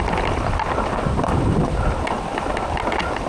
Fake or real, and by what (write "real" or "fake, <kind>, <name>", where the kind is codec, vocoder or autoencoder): real